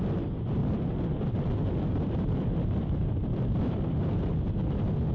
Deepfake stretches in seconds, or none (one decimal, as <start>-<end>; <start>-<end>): 0.6-3.7